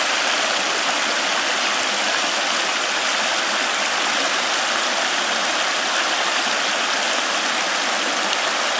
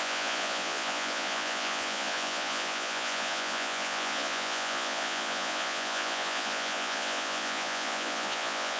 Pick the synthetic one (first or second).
second